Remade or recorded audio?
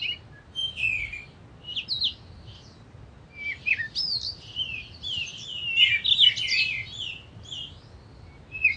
recorded